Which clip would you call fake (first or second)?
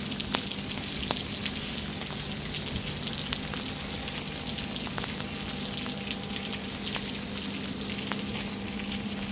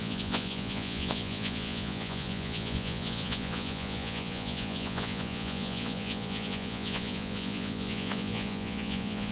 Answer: second